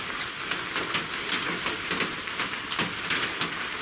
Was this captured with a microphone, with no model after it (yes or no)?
yes